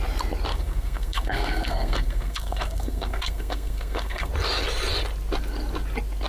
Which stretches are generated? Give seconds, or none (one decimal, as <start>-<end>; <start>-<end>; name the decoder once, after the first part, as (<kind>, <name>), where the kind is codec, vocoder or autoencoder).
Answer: 0.5-4.3 (codec, SNAC)